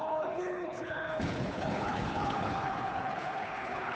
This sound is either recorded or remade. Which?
remade